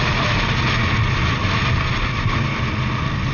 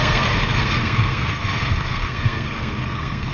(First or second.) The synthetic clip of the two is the second